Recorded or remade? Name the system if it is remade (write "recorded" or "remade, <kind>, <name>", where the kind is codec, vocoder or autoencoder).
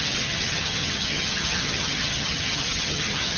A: remade, vocoder, HiFi-GAN